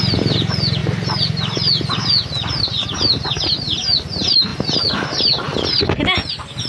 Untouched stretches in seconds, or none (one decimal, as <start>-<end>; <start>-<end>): 0.0-6.7